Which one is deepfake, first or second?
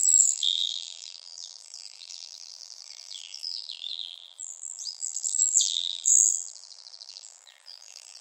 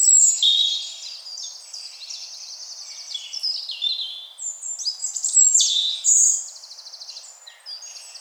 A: first